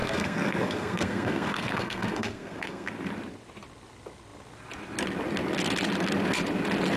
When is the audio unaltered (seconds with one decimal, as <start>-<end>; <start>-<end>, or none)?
2.9-7.0